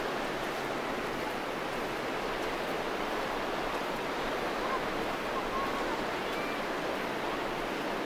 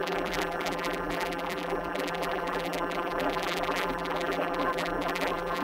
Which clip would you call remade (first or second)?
second